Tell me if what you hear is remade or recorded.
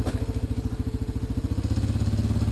recorded